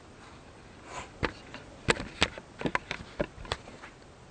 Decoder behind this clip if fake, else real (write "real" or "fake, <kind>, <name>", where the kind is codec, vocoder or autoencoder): real